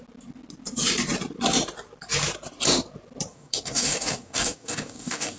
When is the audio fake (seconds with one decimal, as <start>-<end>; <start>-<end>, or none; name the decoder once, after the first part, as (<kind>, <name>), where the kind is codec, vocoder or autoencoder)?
3.3-5.4 (codec, DAC)